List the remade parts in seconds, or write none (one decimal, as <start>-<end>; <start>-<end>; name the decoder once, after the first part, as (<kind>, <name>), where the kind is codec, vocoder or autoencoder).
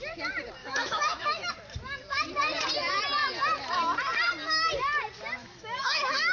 0.6-1.5 (autoencoder, DAC-VAE); 5.4-6.3